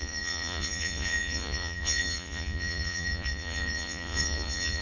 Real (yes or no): no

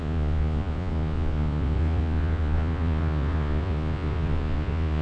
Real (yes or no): no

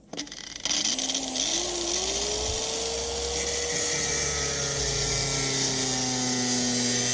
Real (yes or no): yes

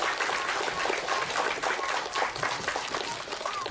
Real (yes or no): yes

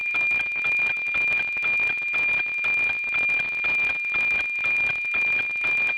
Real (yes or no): yes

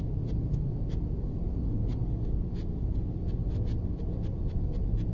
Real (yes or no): yes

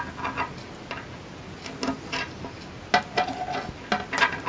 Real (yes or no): yes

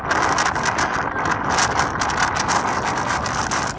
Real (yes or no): yes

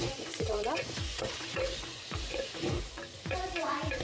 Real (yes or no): no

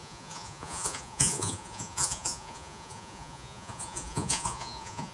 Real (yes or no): no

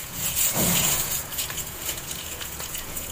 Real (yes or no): no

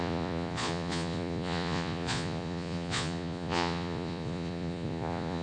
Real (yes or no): no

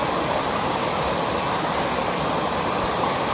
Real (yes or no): yes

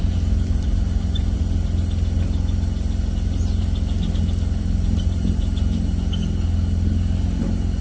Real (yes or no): yes